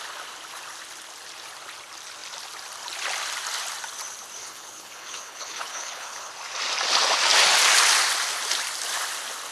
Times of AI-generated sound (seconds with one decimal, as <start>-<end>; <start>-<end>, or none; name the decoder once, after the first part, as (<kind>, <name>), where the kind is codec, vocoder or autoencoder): 4.4-6.3 (codec, HILCodec)